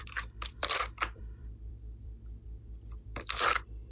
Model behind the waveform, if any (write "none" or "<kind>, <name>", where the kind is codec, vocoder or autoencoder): vocoder, BigVGAN v2